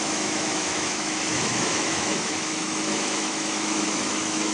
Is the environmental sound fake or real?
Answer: fake